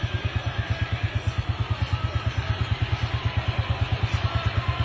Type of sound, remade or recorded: recorded